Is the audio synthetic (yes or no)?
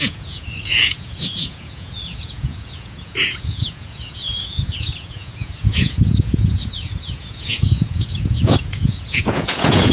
yes